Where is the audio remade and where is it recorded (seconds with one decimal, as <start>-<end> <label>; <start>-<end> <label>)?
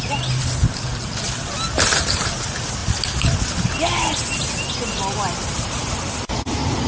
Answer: 0.0-6.9 recorded